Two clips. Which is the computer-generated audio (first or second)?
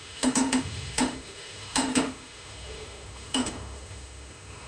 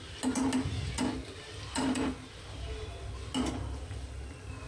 first